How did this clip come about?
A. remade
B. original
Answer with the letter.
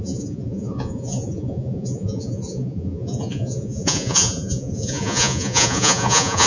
A